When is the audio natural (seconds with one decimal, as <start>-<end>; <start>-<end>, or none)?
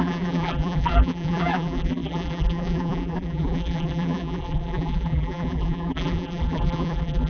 none